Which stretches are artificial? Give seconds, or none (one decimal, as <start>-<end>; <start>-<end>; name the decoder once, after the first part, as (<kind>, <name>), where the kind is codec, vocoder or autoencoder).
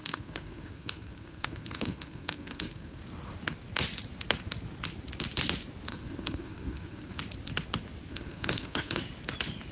0.0-3.0 (codec, SNAC); 5.9-7.2; 8.1-9.0